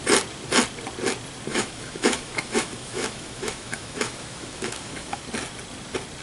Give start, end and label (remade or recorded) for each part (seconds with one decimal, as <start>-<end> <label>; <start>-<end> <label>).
0.0-1.5 recorded; 1.5-5.2 remade; 5.2-6.2 recorded